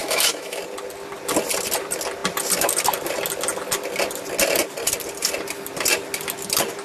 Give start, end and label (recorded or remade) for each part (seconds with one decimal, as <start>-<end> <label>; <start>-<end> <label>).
0.0-0.6 remade; 0.6-6.8 recorded